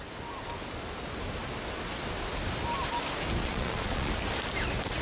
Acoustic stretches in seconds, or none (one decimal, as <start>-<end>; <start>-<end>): 0.0-3.4; 4.1-5.0